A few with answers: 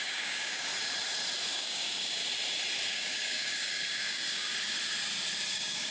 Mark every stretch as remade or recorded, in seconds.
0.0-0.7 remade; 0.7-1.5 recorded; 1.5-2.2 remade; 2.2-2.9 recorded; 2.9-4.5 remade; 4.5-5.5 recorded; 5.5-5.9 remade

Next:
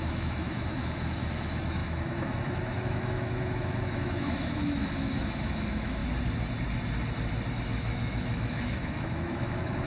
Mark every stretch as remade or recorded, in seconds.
0.0-6.0 remade; 6.0-7.5 recorded; 7.5-9.9 remade

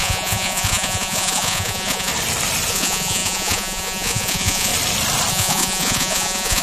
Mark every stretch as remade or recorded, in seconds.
0.0-2.1 remade; 2.1-2.7 recorded; 2.7-4.7 remade; 4.7-5.3 recorded; 5.3-6.6 remade

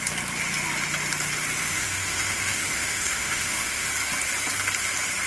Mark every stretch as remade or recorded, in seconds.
0.0-1.6 recorded; 1.6-3.9 remade; 3.9-5.3 recorded

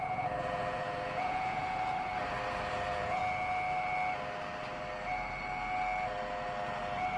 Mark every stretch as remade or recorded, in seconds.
0.0-2.1 remade; 2.1-2.7 recorded; 2.7-3.2 remade; 3.2-7.2 recorded